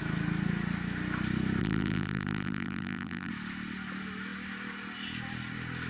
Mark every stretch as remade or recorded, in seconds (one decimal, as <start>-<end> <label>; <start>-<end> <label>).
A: 0.0-1.6 recorded; 1.6-3.3 remade; 3.3-5.9 recorded